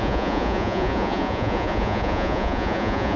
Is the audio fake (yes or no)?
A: yes